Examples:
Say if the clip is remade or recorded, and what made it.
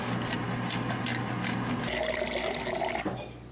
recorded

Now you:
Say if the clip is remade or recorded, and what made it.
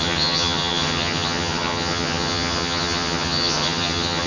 remade, vocoder, HiFi-GAN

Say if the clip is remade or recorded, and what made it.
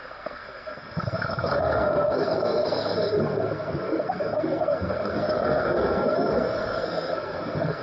remade, codec, SNAC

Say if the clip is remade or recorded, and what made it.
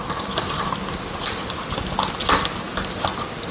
recorded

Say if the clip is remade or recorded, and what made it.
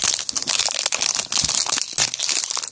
recorded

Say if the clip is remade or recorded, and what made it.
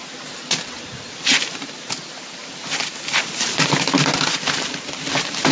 recorded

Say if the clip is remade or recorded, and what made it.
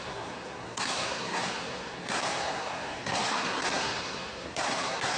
remade, codec, SNAC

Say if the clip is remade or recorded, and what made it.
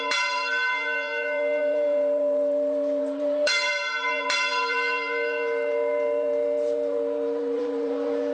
remade, vocoder, BigVGAN v2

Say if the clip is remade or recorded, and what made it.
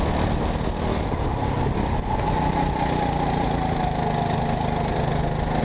recorded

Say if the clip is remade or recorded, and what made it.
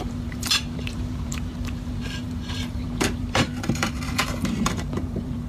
remade, vocoder, BigVGAN v2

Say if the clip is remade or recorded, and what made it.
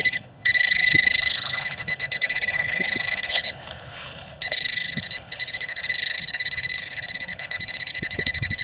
remade, codec, HILCodec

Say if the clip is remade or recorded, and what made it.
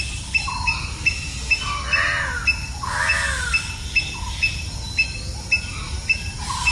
recorded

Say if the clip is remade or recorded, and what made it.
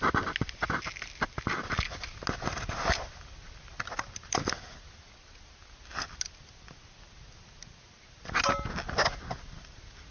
recorded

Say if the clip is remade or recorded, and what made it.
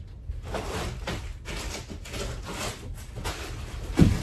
recorded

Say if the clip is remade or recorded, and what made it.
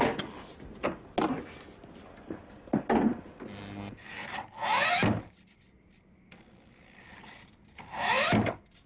recorded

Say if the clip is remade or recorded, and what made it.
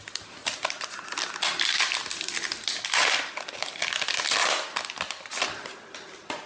recorded